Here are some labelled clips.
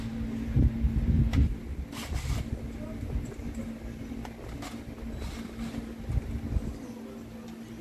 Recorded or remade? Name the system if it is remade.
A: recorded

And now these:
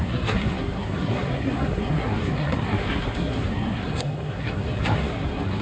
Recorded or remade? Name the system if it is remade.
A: remade, codec, SNAC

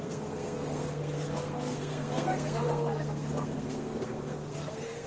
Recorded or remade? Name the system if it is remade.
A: remade, codec, SNAC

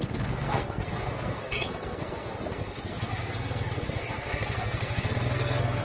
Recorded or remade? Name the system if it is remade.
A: remade, codec, SNAC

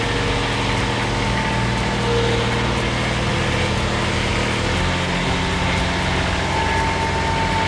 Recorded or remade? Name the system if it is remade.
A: recorded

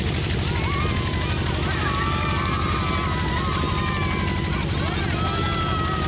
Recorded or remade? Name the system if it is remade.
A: recorded